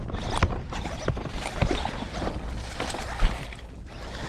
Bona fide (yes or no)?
yes